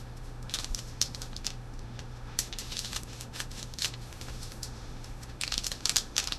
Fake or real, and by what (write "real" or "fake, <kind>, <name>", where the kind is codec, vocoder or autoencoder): fake, autoencoder, DAC-VAE